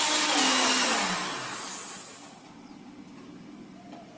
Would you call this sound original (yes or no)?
yes